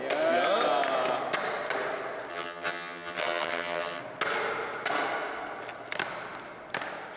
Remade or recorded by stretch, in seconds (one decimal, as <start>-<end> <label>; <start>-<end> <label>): 0.0-2.3 recorded; 2.3-4.0 remade; 4.0-7.2 recorded